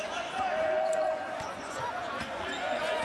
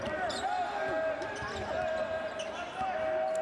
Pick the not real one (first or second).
first